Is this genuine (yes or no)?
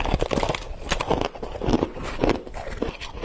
no